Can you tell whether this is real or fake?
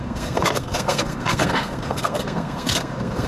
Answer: fake